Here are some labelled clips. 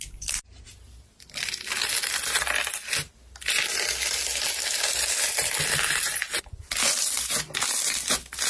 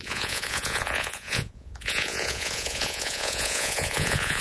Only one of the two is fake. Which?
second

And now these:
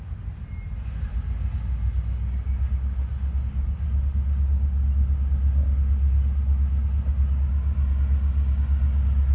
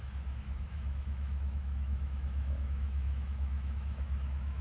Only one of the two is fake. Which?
second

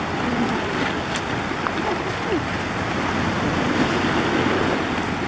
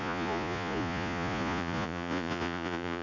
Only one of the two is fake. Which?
second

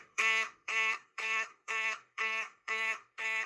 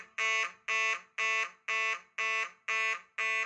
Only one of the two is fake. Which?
first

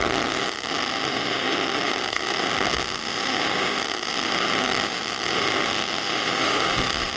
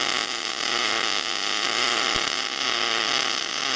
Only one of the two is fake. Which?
first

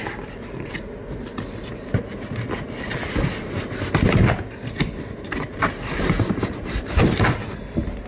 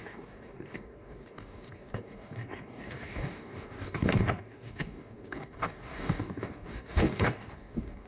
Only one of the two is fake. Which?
second